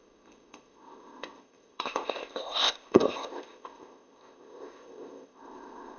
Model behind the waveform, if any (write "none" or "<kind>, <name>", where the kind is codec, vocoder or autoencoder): codec, ZipCodec